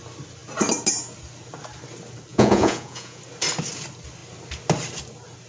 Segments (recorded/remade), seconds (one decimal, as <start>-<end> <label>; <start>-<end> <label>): 0.0-2.3 recorded; 2.3-3.2 remade; 3.2-5.5 recorded